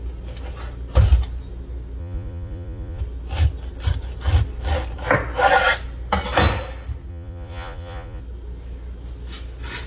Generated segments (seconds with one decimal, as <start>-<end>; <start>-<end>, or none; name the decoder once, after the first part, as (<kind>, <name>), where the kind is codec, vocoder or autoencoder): 2.0-3.0 (vocoder, Vocos); 7.1-8.2